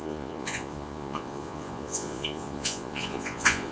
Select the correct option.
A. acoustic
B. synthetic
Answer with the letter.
B